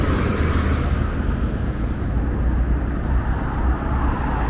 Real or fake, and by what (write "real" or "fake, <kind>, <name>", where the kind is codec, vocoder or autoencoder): real